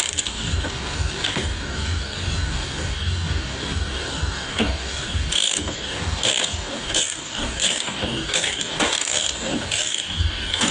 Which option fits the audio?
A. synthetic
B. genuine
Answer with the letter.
A